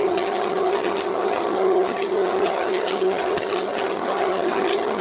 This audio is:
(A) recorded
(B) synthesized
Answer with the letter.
B